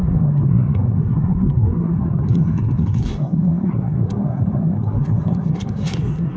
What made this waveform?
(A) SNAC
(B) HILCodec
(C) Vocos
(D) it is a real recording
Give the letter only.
A